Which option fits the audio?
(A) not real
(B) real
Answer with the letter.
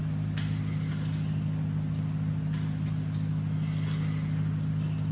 B